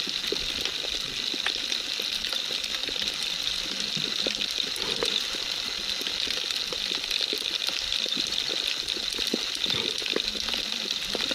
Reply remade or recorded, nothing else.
recorded